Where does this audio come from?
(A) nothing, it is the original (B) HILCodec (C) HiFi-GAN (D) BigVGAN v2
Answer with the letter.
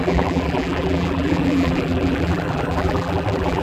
D